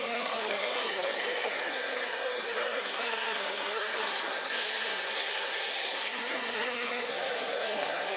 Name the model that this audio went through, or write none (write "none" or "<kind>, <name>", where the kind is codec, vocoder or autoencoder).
codec, SNAC